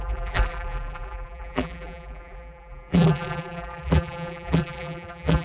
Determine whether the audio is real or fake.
fake